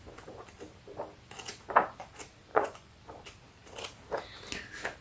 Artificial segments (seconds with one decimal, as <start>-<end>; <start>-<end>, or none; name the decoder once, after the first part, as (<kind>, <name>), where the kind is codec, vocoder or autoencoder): 2.5-3.0 (vocoder, Vocos)